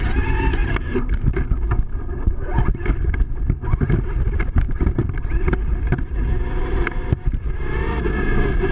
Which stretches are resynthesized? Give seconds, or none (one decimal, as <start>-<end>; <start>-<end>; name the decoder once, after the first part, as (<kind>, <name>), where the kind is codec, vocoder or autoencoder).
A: 0.6-1.3 (vocoder, BigVGAN v2); 5.0-7.3